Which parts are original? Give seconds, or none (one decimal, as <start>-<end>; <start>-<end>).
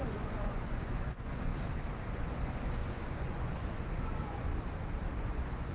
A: 1.5-2.1; 4.5-5.2